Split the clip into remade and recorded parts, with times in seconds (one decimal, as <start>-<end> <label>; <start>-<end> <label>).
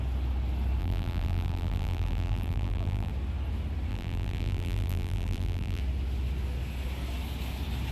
0.0-0.8 recorded; 0.8-3.1 remade; 3.1-3.9 recorded; 3.9-5.8 remade; 5.8-7.9 recorded